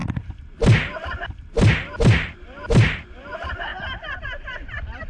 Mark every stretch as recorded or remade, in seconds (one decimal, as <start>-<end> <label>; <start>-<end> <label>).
0.0-3.7 remade; 3.7-4.2 recorded; 4.2-5.1 remade